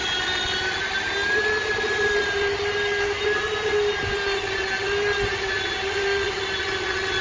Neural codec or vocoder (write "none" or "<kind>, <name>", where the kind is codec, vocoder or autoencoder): none